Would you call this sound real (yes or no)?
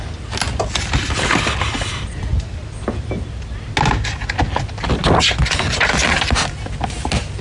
yes